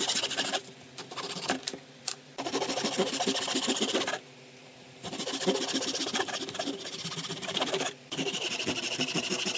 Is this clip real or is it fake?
fake